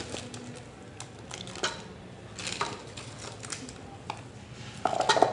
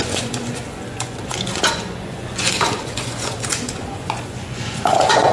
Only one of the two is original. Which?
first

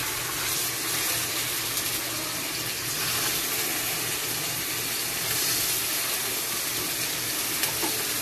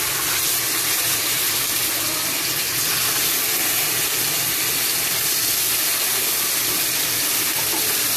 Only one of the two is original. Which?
first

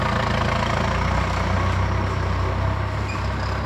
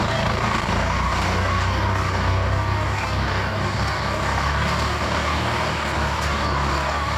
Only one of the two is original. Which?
first